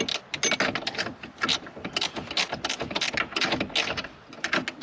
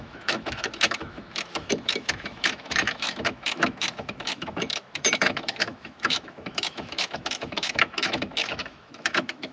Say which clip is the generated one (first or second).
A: second